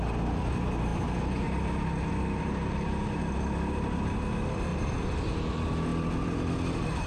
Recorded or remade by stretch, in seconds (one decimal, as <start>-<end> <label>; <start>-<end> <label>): 0.0-5.9 recorded; 5.9-6.4 remade; 6.4-7.1 recorded